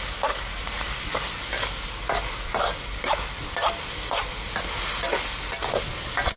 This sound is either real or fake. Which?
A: real